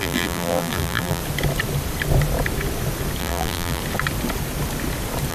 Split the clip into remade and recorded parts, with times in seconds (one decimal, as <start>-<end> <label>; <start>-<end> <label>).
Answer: 0.0-1.2 remade; 1.2-3.2 recorded; 3.2-3.8 remade; 3.8-5.3 recorded